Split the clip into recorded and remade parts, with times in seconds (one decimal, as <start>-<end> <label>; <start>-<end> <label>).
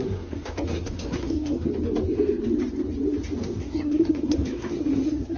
0.0-1.7 remade; 1.7-3.4 recorded; 3.4-5.4 remade